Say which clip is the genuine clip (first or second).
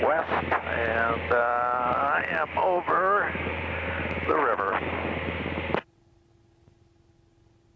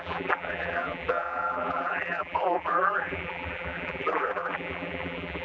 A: first